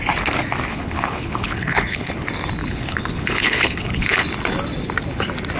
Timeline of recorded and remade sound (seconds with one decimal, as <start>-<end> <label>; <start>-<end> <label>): 0.0-0.7 recorded; 0.7-2.1 remade; 2.1-2.6 recorded; 2.6-4.2 remade; 4.2-5.6 recorded